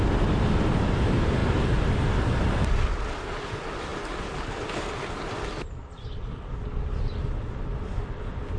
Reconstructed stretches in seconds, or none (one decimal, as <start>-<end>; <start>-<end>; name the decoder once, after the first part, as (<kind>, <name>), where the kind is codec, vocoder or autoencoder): none

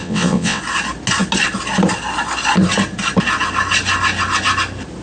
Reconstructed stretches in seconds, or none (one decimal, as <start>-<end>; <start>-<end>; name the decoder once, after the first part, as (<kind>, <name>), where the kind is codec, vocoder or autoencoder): 0.0-0.6 (vocoder, WaveNeXt)

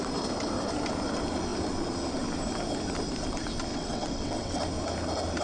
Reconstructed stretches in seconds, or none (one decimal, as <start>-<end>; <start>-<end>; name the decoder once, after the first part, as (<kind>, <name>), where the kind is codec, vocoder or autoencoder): 3.7-4.6 (vocoder, WaveNeXt)

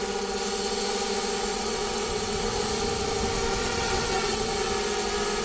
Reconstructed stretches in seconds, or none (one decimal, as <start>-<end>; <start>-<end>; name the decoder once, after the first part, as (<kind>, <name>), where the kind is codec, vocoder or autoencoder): 1.5-2.6 (vocoder, WaveNeXt); 3.6-4.7

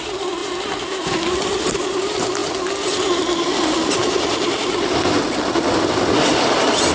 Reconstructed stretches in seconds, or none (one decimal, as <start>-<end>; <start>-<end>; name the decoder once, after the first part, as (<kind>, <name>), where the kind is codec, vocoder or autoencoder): none

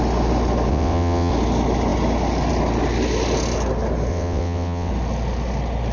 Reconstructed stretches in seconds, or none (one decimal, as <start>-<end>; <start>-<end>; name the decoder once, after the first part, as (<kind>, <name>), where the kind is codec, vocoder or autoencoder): 0.7-1.3 (vocoder, WaveNeXt); 4.1-4.9

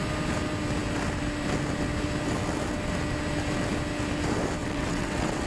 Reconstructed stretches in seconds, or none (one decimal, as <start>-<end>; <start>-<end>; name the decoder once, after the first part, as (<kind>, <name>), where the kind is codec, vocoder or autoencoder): 4.6-5.5 (vocoder, WaveNeXt)